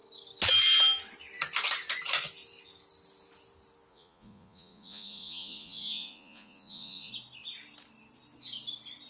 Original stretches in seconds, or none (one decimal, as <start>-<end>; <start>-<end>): 0.0-3.9; 7.1-9.1